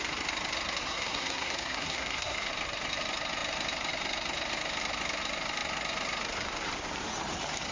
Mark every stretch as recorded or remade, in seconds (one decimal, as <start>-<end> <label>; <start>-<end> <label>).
0.0-0.8 recorded; 0.8-2.5 remade; 2.5-7.7 recorded